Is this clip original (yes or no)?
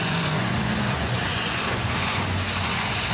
no